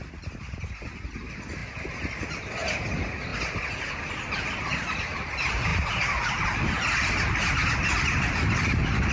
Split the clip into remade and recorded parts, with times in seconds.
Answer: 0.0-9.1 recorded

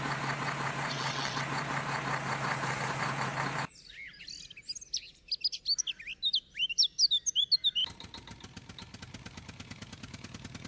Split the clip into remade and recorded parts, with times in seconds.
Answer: 0.0-0.9 recorded; 0.9-1.4 remade; 1.4-10.7 recorded

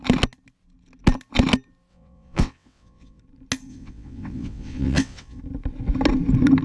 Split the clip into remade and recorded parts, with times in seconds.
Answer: 0.0-1.9 recorded; 1.9-3.2 remade; 3.2-3.7 recorded; 3.7-5.4 remade; 5.4-6.6 recorded